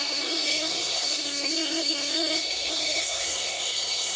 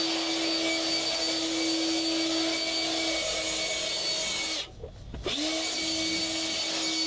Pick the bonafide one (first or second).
second